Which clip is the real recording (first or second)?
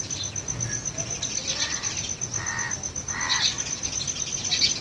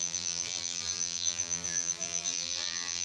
first